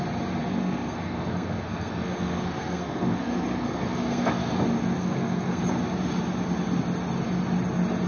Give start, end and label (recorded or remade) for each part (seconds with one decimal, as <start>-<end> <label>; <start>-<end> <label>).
0.0-0.5 recorded; 0.5-4.3 remade; 4.3-5.0 recorded; 5.0-5.6 remade; 5.6-8.1 recorded